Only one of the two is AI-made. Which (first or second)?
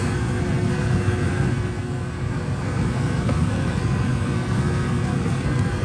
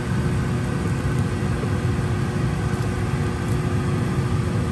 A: first